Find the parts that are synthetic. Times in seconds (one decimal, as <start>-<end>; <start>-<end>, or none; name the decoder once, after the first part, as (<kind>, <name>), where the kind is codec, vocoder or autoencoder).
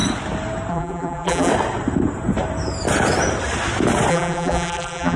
0.7-1.5 (vocoder, BigVGAN v2); 4.1-5.2